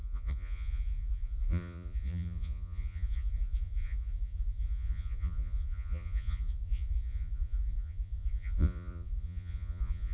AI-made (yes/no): yes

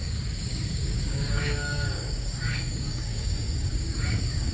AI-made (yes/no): yes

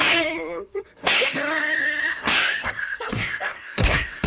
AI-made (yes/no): yes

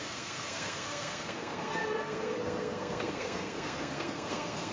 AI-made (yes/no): yes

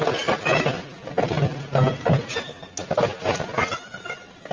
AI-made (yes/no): no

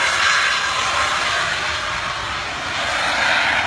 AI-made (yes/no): no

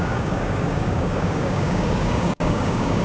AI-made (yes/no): yes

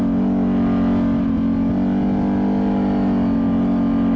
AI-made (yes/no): no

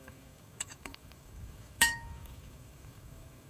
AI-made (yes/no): yes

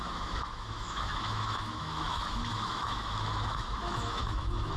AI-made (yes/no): yes